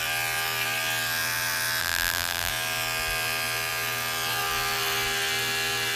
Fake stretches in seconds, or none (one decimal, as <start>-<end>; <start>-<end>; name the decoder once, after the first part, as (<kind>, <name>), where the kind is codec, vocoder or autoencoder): 1.8-2.5 (vocoder, BigVGAN v2)